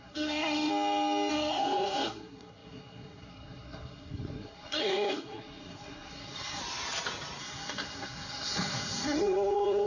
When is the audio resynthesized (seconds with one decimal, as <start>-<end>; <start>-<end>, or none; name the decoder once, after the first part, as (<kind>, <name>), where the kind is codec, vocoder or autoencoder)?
0.0-0.7 (codec, SNAC); 1.3-6.6; 7.4-9.9